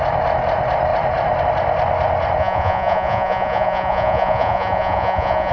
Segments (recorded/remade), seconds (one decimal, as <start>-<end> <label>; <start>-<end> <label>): 0.0-2.4 recorded; 2.4-5.5 remade